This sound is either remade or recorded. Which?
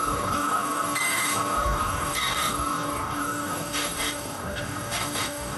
remade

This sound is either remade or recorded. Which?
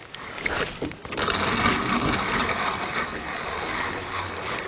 recorded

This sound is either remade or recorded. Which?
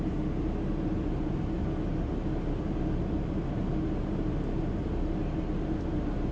recorded